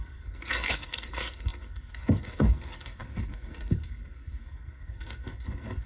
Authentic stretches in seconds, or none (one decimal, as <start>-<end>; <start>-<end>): none